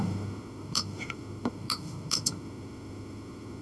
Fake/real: fake